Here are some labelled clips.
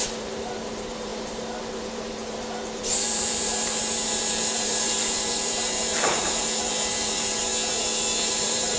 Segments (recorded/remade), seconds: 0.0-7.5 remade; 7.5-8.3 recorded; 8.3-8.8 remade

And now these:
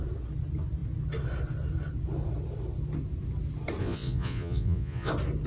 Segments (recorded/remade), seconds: 0.0-3.8 recorded; 3.8-5.1 remade; 5.1-5.5 recorded